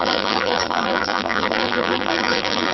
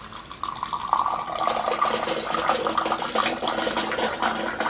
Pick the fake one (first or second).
first